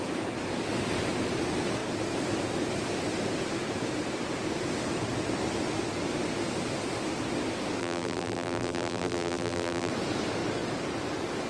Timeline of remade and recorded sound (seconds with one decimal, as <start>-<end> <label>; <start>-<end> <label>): 0.0-7.8 recorded; 7.8-9.9 remade; 9.9-11.5 recorded